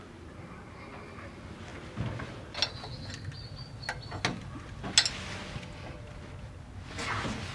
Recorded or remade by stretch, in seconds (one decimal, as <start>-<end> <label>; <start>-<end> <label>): 0.0-7.5 recorded